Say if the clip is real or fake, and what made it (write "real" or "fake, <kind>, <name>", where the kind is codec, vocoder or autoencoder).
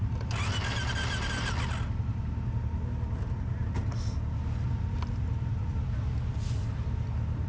real